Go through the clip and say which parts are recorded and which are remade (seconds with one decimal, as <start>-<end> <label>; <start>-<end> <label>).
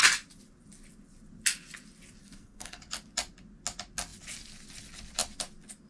0.0-2.2 recorded; 2.2-2.8 remade; 2.8-5.9 recorded